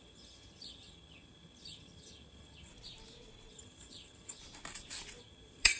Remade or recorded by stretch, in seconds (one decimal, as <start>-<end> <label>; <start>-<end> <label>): 0.0-2.7 remade; 2.7-3.5 recorded; 3.5-4.4 remade; 4.4-5.2 recorded; 5.2-5.8 remade